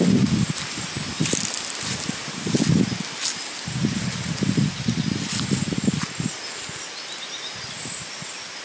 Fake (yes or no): no